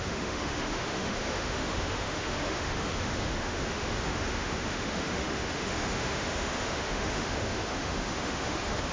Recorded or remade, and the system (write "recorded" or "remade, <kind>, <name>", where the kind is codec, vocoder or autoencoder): remade, autoencoder, DAC-VAE